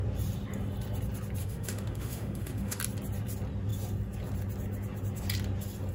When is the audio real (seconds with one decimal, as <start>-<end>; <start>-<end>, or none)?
0.0-1.4; 2.8-5.9